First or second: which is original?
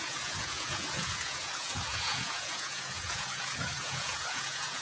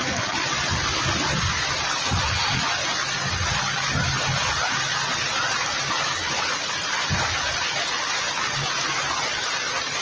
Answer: second